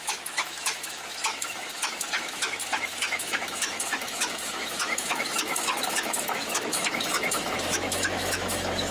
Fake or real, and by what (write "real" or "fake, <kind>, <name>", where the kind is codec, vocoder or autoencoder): fake, autoencoder, DAC-VAE